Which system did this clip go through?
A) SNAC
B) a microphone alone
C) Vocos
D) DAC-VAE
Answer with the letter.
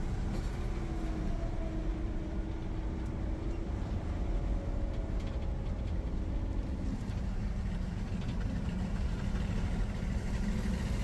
B